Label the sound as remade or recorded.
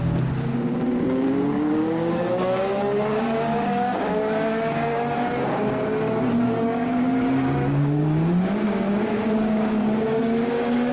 remade